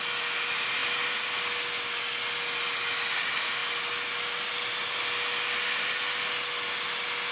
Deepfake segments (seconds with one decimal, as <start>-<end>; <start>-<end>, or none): none